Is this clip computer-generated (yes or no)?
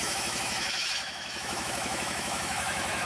yes